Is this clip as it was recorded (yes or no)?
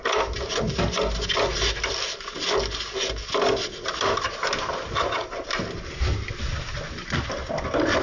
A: yes